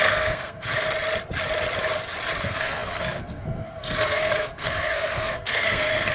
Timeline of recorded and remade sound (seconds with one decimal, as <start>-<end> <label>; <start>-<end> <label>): 0.0-0.7 remade; 0.7-2.4 recorded; 2.4-6.1 remade